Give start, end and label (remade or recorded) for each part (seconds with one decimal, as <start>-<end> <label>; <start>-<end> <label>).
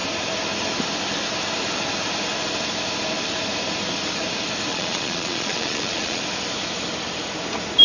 0.0-4.7 recorded; 4.7-6.2 remade; 6.2-7.8 recorded